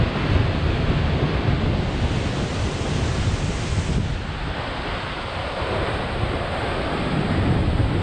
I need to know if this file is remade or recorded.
recorded